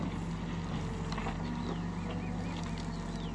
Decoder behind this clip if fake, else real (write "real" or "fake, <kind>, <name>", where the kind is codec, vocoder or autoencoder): real